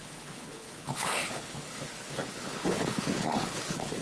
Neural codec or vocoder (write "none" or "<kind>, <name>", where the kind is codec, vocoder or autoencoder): codec, HILCodec